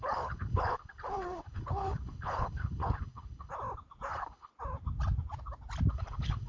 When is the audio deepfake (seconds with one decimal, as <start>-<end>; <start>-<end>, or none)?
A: 0.0-3.5; 4.1-4.5; 5.9-6.5